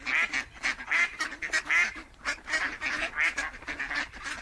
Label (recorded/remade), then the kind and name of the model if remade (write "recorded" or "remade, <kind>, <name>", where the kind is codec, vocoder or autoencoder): recorded